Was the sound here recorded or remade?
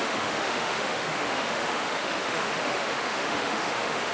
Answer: remade